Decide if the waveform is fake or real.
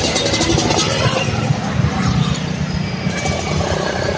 real